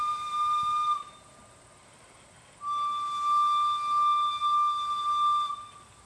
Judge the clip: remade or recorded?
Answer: recorded